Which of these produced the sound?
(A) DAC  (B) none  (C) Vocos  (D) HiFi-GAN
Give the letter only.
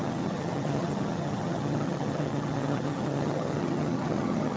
D